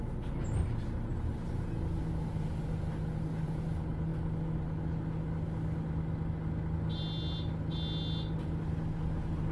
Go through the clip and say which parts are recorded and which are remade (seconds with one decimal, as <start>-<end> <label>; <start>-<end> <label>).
0.0-9.5 recorded